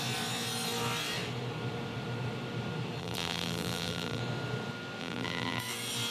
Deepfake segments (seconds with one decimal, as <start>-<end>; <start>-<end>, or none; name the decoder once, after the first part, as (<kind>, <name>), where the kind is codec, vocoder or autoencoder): 3.0-4.2 (vocoder, BigVGAN v2); 5.0-5.6